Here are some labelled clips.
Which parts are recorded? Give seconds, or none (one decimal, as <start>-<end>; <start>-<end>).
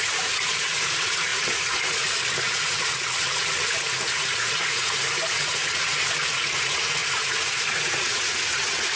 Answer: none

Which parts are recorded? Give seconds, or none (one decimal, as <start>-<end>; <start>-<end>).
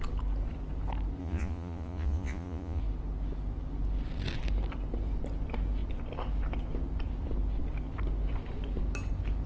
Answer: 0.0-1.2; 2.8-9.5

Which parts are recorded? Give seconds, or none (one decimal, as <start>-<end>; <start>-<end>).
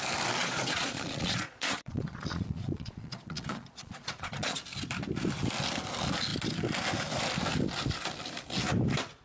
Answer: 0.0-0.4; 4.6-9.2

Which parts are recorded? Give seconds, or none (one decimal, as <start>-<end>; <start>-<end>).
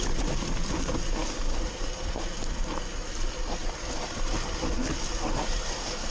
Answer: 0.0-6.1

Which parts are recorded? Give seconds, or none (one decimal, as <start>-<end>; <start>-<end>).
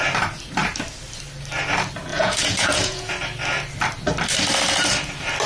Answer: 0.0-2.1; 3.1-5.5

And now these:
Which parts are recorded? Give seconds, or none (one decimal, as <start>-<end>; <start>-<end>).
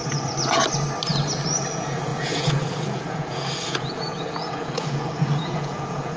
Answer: 0.0-1.7